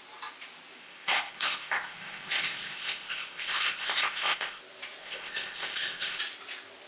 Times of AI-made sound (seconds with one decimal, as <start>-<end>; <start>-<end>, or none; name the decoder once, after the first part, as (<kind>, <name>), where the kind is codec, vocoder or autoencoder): 0.8-4.6 (codec, ZipCodec); 5.0-6.2